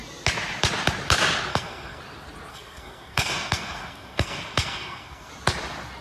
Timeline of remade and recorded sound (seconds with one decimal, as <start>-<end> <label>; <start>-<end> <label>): 0.0-1.5 recorded; 1.5-2.0 remade; 2.0-2.5 recorded; 2.5-5.3 remade; 5.3-6.0 recorded